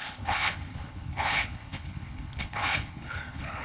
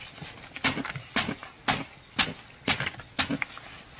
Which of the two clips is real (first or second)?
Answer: second